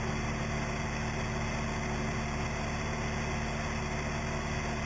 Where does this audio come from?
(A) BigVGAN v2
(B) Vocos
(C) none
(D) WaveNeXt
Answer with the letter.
C